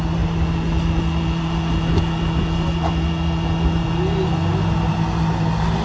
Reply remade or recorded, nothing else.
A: recorded